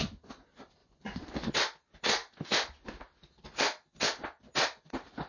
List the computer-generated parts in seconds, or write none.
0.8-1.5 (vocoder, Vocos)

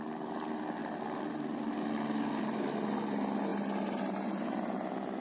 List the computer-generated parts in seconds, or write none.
none

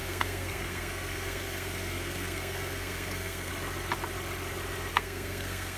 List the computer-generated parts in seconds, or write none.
0.0-3.5 (codec, SNAC); 4.9-5.8

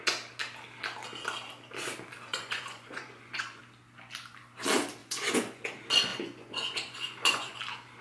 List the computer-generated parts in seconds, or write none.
2.3-3.6 (vocoder, Vocos); 5.0-5.6; 6.1-7.6